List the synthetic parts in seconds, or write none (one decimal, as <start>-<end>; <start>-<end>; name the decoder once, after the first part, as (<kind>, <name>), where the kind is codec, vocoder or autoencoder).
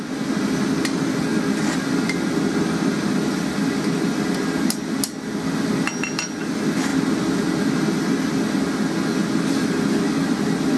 none